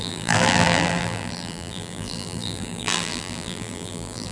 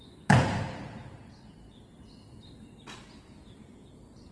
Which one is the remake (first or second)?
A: first